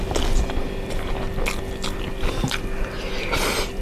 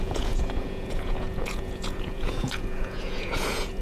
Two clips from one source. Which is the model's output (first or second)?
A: second